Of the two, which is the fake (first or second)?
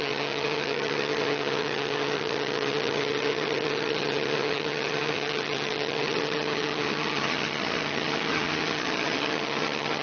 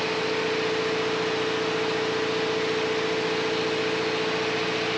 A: first